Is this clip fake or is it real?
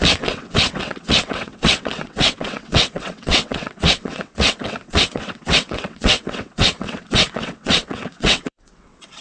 fake